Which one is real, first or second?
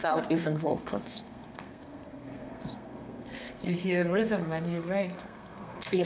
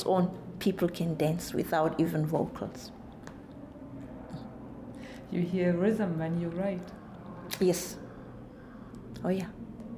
second